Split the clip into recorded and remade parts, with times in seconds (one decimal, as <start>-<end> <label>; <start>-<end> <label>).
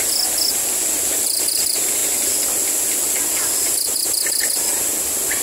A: 0.0-5.4 recorded